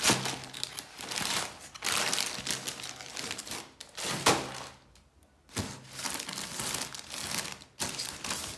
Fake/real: real